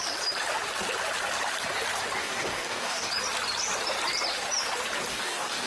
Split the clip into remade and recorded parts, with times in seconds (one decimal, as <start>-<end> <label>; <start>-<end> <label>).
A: 0.0-2.2 recorded; 2.2-3.1 remade; 3.1-5.1 recorded; 5.1-5.7 remade